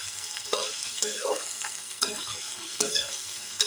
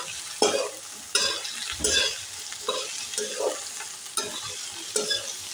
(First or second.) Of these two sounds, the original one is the second